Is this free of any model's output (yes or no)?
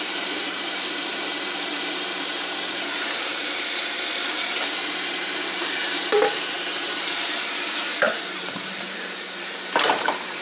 no